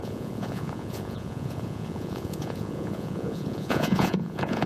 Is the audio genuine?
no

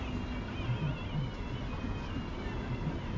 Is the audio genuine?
yes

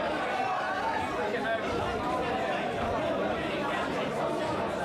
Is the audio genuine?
yes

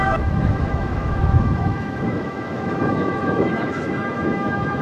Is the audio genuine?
no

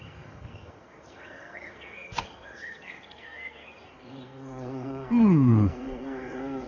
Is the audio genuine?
no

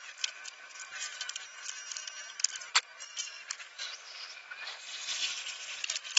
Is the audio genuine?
yes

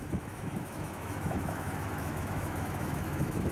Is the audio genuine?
no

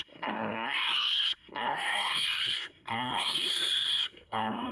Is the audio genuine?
no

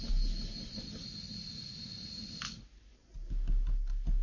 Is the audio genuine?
yes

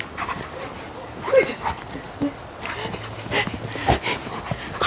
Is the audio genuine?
yes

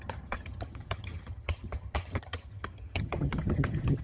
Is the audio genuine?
no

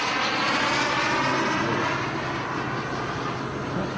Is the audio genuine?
yes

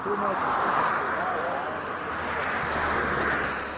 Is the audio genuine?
yes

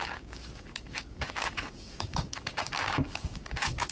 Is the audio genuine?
no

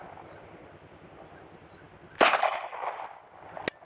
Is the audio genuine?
yes